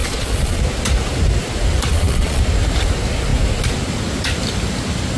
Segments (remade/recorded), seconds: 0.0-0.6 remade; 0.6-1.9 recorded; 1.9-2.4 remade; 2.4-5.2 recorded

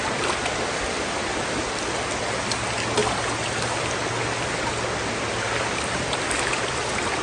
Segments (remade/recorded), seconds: 0.0-7.2 recorded

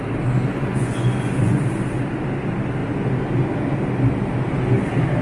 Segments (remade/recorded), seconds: 0.0-0.5 recorded; 0.5-1.6 remade; 1.6-5.2 recorded

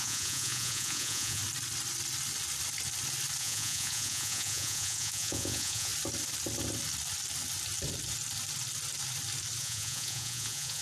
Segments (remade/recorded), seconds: 0.0-1.4 remade; 1.4-3.4 recorded; 3.4-5.9 remade; 5.9-9.6 recorded; 9.6-10.8 remade

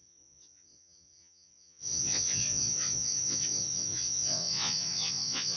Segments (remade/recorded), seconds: 0.0-5.6 remade

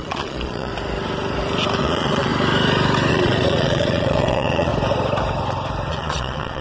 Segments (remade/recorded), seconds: 0.0-0.7 remade; 0.7-1.8 recorded; 1.8-2.3 remade; 2.3-3.1 recorded; 3.1-4.7 remade; 4.7-5.9 recorded; 5.9-6.6 remade

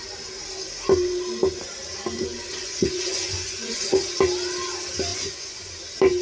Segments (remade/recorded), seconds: 0.0-2.6 recorded; 2.6-4.0 remade; 4.0-5.1 recorded; 5.1-5.7 remade; 5.7-6.2 recorded

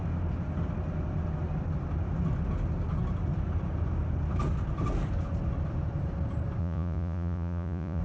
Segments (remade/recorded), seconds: 0.0-6.6 recorded; 6.6-8.0 remade